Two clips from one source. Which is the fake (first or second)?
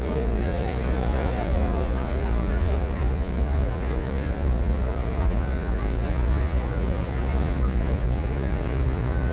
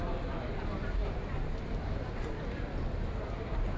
first